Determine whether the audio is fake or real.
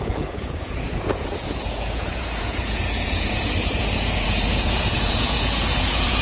fake